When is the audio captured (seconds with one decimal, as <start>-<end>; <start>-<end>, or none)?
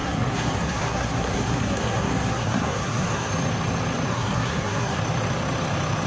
3.3-4.1; 5.0-6.1